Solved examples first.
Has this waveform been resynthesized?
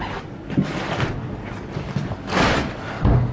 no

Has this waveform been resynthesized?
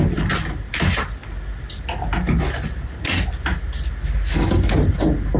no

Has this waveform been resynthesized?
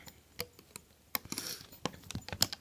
no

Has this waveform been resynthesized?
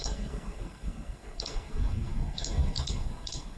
yes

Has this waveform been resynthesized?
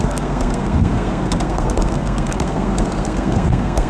yes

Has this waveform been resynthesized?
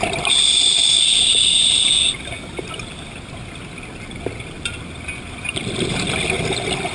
no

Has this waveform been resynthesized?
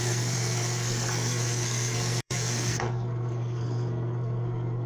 yes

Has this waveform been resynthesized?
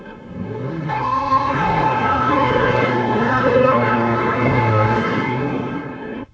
yes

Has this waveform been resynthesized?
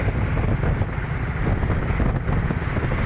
no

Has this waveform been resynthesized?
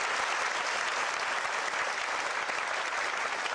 no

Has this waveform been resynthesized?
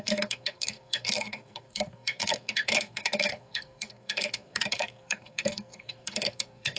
yes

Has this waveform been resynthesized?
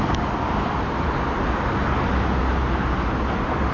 no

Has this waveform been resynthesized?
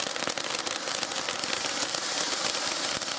no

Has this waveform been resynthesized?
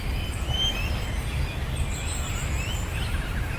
no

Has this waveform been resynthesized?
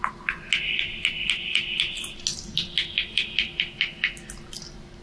no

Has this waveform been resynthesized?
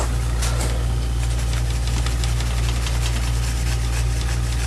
no